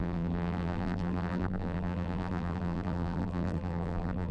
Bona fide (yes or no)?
no